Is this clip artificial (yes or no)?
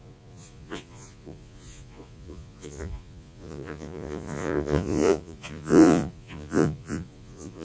yes